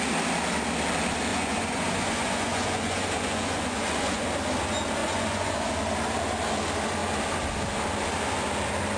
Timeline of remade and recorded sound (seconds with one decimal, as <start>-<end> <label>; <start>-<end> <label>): 0.0-1.3 recorded; 1.3-4.3 remade; 4.3-5.0 recorded; 5.0-5.7 remade; 5.7-9.0 recorded